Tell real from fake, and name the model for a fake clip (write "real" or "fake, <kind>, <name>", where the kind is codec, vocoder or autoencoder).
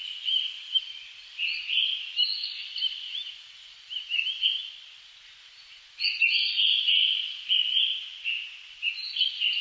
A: real